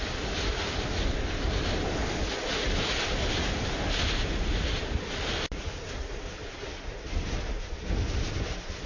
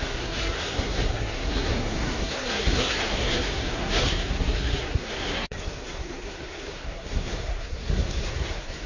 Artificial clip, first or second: second